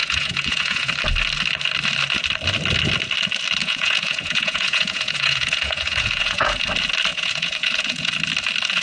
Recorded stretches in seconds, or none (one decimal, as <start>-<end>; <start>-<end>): 0.9-3.6; 6.6-7.1; 8.1-8.8